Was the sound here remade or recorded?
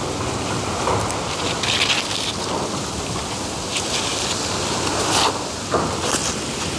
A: recorded